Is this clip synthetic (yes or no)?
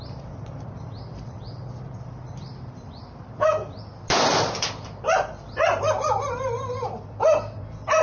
yes